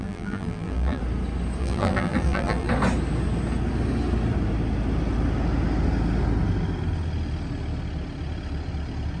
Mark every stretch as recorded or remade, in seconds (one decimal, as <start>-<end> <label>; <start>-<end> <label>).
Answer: 0.0-1.0 remade; 1.0-1.6 recorded; 1.6-2.7 remade; 2.7-9.2 recorded